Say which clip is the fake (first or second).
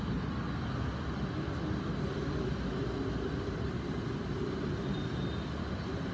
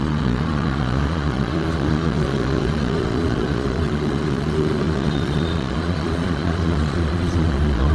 second